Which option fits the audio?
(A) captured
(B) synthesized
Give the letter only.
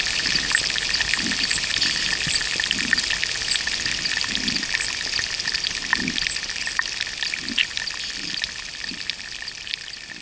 B